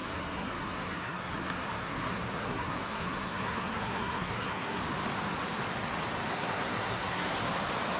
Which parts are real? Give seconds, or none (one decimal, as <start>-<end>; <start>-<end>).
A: 4.8-6.3; 7.4-8.0